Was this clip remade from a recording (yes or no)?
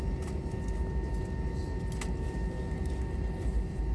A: no